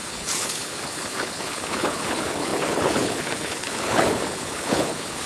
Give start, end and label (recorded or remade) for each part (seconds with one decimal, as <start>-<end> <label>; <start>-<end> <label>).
0.0-5.3 remade